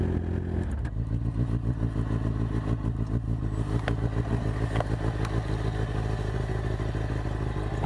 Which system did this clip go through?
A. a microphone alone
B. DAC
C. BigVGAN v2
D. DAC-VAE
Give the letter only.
A